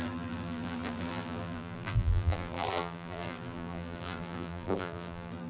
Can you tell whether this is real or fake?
fake